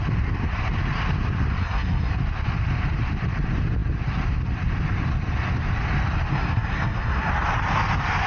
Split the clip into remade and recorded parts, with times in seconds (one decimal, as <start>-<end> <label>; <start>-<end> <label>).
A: 0.0-1.6 recorded; 1.6-2.1 remade; 2.1-6.3 recorded; 6.3-7.3 remade; 7.3-8.3 recorded